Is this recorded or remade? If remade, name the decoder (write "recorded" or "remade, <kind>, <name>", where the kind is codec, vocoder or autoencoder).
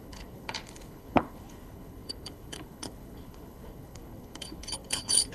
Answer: remade, codec, HILCodec